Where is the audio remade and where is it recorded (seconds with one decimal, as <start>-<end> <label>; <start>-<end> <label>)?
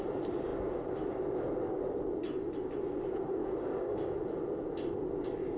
0.0-3.4 recorded; 3.4-4.2 remade; 4.2-5.6 recorded